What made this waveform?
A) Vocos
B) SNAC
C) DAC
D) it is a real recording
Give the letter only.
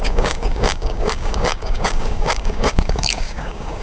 C